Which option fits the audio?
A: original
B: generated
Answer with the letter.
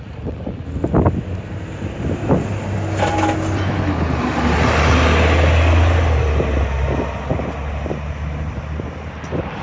A